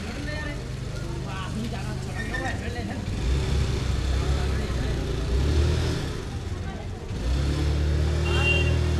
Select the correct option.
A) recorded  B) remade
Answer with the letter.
A